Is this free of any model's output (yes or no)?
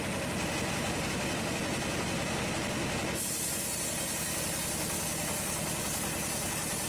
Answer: yes